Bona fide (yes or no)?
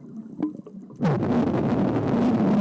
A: yes